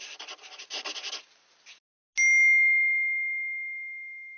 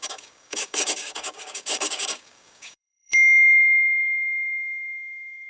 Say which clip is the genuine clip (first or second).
first